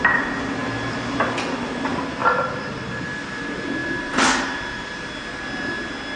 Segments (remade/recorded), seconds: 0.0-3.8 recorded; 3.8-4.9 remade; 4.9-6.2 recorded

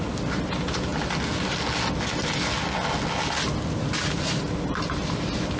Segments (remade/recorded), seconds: 0.0-0.9 remade; 0.9-3.7 recorded; 3.7-5.6 remade

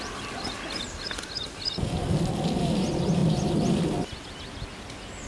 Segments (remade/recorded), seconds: 0.0-3.2 remade; 3.2-4.7 recorded; 4.7-5.3 remade

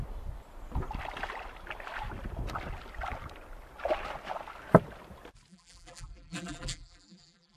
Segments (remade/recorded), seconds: 0.0-5.5 recorded; 5.5-7.6 remade

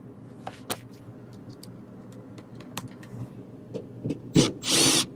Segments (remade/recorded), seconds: 0.0-5.2 recorded

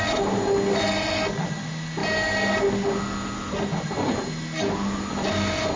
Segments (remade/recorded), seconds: 0.0-5.8 recorded

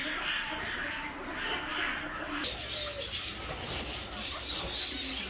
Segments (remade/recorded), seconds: 0.0-5.3 remade